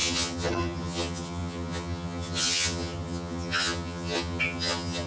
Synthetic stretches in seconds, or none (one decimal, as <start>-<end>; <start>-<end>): 0.0-5.1